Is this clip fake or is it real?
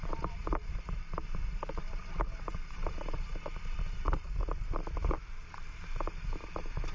fake